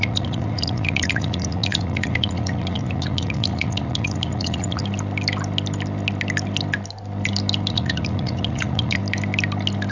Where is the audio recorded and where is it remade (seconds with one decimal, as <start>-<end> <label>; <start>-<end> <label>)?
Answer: 0.0-4.8 remade; 4.8-7.7 recorded; 7.7-9.0 remade; 9.0-9.9 recorded